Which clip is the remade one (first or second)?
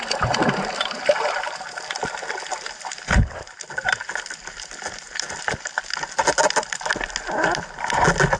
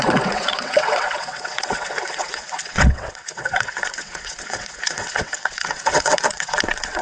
second